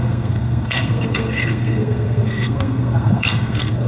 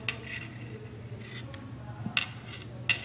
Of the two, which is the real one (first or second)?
second